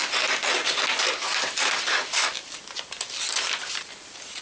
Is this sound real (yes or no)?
yes